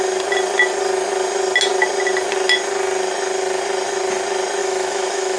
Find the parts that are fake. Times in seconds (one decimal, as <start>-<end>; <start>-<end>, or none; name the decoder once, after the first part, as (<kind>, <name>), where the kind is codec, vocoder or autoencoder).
4.6-5.4 (autoencoder, DAC-VAE)